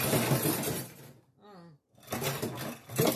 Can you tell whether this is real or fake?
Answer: real